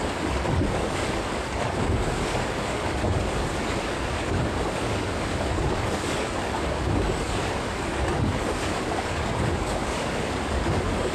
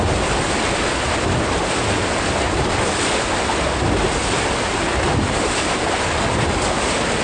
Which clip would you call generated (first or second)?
first